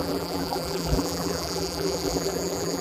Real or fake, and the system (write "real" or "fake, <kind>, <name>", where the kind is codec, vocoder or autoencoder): fake, vocoder, BigVGAN v2